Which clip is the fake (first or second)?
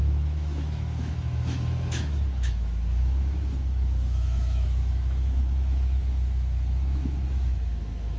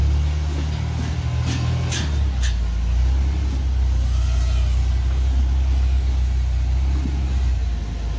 first